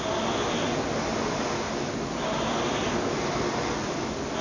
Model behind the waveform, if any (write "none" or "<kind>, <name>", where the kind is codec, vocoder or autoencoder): none